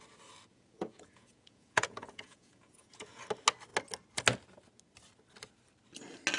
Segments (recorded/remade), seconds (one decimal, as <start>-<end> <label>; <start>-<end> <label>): 0.0-0.5 recorded; 0.5-3.2 remade; 3.2-6.4 recorded